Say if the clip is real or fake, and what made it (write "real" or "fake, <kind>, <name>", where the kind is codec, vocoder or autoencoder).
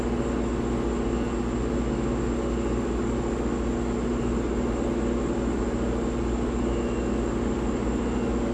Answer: real